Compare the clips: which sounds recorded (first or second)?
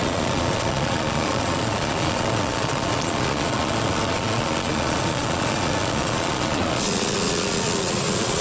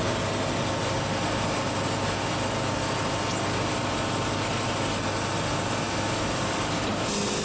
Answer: second